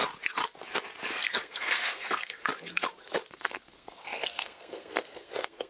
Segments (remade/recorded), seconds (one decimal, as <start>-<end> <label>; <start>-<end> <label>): 0.0-1.1 recorded; 1.1-2.4 remade; 2.4-3.3 recorded; 3.3-5.7 remade